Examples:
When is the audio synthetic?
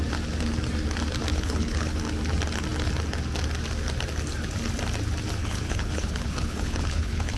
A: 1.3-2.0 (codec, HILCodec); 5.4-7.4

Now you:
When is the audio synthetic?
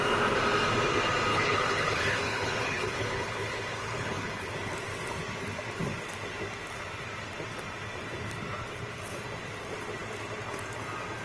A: 1.3-4.5 (codec, HILCodec)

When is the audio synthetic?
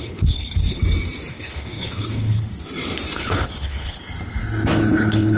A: 0.0-0.8 (codec, HILCodec); 1.3-2.5; 3.2-4.0; 4.9-5.4